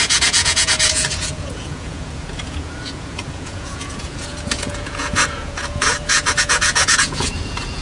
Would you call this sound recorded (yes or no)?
no